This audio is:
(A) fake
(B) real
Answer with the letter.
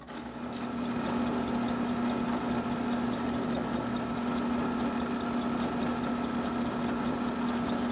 B